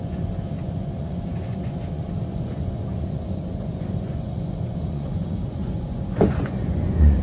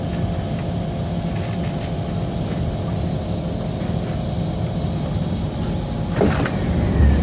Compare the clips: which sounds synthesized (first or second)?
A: first